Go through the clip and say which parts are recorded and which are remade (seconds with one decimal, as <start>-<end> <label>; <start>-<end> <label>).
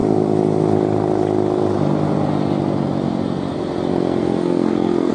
0.0-3.9 recorded; 3.9-5.1 remade